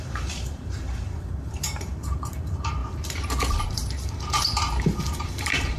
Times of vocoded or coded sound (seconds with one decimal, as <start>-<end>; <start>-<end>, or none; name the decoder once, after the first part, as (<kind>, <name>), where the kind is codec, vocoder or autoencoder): 0.0-2.8 (vocoder, BigVGAN v2); 3.5-5.8